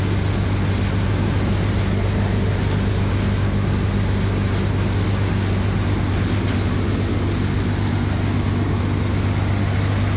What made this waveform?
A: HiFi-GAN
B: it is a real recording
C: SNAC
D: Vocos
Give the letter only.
B